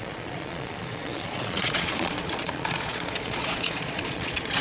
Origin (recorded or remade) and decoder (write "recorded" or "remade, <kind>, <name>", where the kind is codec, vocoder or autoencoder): remade, vocoder, Vocos